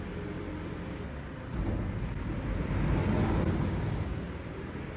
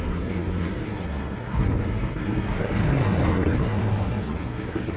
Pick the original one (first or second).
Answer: first